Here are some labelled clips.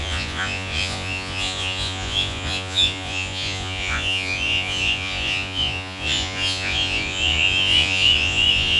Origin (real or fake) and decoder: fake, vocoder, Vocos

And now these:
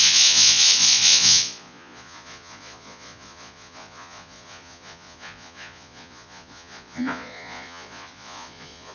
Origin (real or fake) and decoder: fake, vocoder, Vocos